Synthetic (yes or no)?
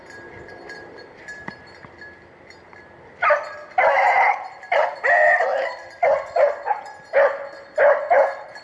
no